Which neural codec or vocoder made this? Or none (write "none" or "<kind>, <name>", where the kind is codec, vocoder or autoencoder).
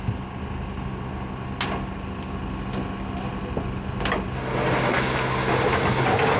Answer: none